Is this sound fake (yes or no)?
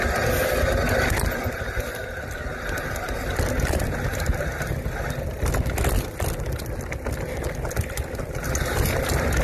no